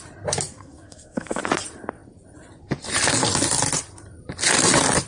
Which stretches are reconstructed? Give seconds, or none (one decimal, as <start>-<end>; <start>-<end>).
0.5-1.4